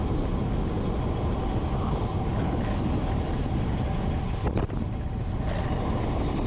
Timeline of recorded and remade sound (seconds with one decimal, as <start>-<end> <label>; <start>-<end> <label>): 0.0-6.5 recorded